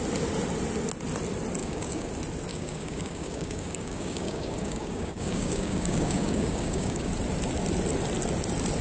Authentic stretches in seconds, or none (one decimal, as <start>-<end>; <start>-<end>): 0.0-1.6; 2.1-2.5; 7.1-8.8